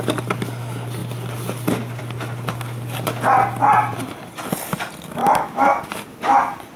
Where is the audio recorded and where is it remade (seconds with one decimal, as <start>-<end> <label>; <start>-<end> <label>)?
0.0-5.2 recorded; 5.2-5.8 remade; 5.8-6.8 recorded